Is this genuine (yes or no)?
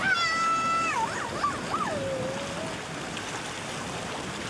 yes